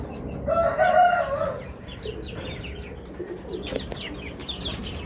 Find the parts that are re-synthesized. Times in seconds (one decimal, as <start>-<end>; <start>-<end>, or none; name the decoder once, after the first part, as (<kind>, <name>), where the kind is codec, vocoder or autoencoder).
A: 1.0-2.8 (vocoder, BigVGAN v2)